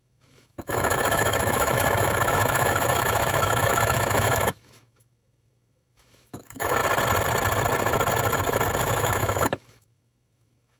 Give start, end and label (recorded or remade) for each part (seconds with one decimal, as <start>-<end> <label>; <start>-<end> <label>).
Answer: 0.0-6.8 remade; 6.8-8.8 recorded; 8.8-10.8 remade